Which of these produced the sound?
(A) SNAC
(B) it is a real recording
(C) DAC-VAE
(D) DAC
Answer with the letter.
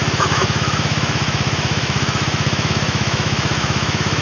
C